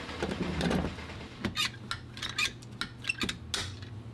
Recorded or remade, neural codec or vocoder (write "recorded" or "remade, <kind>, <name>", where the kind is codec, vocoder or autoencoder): recorded